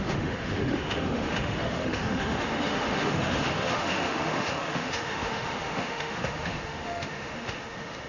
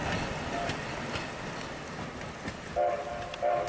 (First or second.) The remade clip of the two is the first